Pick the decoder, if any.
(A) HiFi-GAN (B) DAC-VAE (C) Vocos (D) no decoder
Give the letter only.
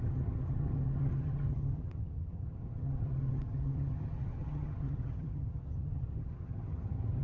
A